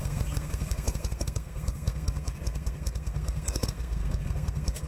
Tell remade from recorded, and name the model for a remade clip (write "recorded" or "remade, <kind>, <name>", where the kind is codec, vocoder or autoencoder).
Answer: remade, codec, SNAC